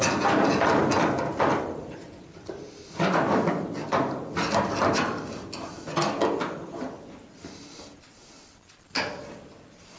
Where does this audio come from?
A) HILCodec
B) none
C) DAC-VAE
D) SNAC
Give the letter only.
B